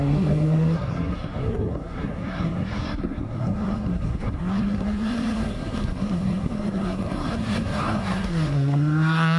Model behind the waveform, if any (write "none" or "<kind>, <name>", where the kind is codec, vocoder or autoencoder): codec, SNAC